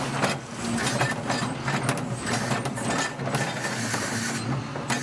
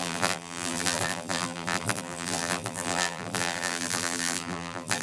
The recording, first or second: first